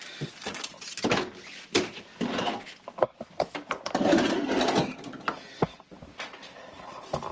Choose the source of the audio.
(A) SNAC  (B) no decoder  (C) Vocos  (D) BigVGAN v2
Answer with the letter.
B